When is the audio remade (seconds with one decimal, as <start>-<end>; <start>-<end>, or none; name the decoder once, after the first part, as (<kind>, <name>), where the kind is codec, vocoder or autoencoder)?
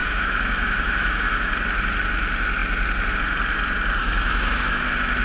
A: 0.0-1.5 (autoencoder, DAC-VAE); 4.0-4.8